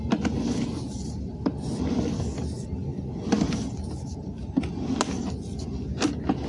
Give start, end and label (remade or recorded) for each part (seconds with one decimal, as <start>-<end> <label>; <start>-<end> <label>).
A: 0.0-6.5 recorded